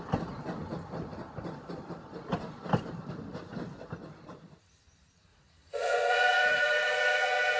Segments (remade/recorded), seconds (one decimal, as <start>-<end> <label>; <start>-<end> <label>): 0.0-5.3 recorded; 5.3-7.6 remade